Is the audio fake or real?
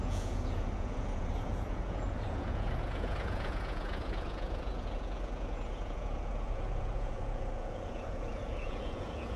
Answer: fake